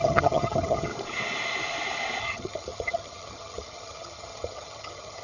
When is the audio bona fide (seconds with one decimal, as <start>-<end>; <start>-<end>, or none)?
0.9-2.2

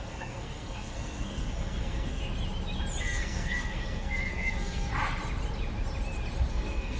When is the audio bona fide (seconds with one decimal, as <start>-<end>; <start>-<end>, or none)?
2.2-3.0; 4.9-6.5

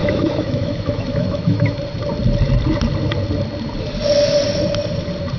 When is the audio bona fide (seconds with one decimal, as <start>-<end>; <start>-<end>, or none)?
1.8-5.4

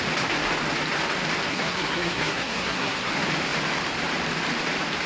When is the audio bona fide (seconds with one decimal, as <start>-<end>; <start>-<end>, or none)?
0.0-1.5; 3.1-5.1

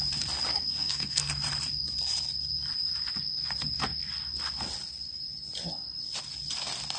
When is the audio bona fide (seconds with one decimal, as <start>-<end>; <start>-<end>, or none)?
0.0-0.5; 1.3-7.0

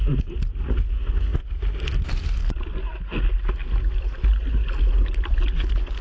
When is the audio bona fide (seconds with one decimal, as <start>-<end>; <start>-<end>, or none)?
0.0-6.0

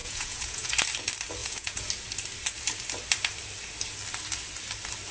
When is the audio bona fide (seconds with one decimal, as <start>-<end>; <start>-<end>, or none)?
0.7-1.4; 1.9-5.1

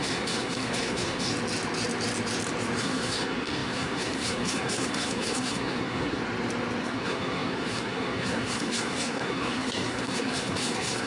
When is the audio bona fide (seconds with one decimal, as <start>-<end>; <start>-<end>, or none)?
1.3-2.8; 6.2-6.8